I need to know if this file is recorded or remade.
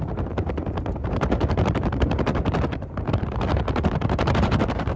remade